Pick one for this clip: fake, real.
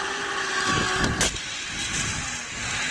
real